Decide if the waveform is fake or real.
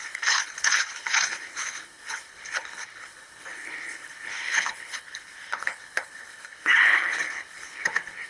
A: fake